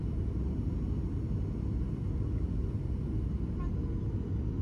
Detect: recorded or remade recorded